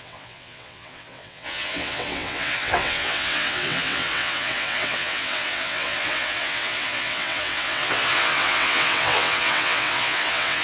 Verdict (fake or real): fake